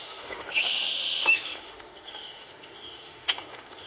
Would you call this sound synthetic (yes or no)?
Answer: yes